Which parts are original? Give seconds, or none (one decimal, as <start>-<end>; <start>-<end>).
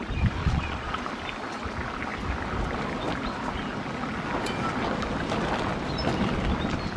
0.0-0.4; 0.9-7.0